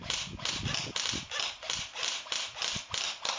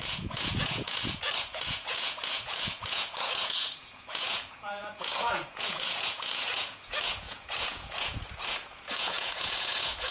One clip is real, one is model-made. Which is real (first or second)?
first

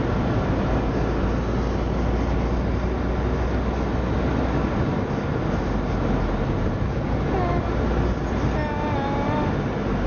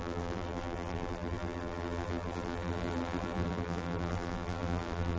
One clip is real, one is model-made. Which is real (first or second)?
first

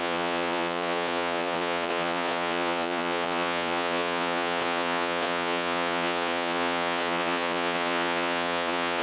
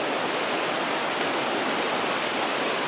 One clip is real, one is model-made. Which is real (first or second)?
second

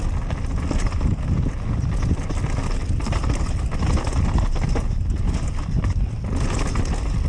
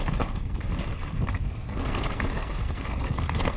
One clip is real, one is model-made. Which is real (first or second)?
first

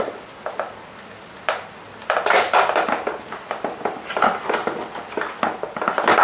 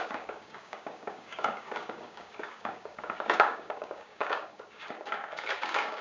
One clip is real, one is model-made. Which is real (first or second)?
first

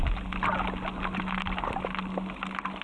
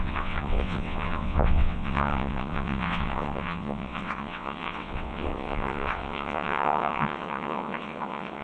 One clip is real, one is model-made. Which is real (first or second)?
first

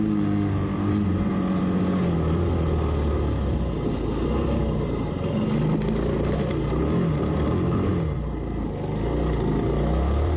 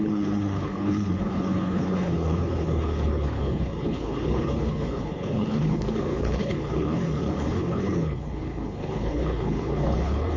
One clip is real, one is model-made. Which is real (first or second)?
first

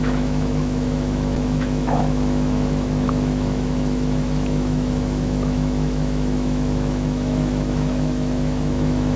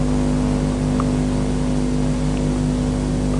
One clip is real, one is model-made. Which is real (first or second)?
second